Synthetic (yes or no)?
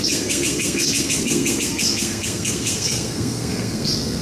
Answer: yes